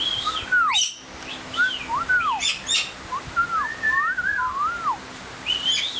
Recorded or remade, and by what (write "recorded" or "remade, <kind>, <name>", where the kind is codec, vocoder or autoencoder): recorded